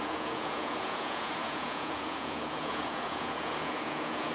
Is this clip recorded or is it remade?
remade